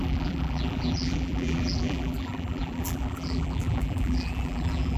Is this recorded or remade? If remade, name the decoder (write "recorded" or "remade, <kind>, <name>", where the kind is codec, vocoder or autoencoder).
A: remade, vocoder, BigVGAN v2